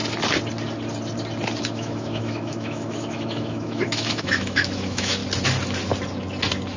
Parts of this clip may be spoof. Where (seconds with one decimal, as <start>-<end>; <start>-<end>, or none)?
1.6-5.2